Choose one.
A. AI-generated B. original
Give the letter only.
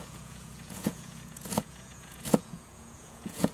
A